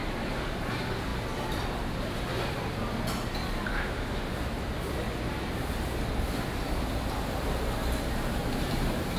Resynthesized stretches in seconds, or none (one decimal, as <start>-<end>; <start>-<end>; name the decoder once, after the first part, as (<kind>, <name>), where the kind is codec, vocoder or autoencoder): 3.7-4.2 (autoencoder, DAC-VAE)